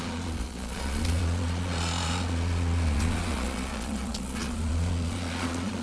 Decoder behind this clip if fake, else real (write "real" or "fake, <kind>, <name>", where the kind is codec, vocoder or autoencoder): fake, vocoder, Vocos